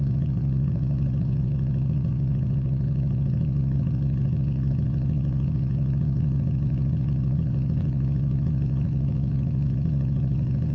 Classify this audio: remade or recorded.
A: remade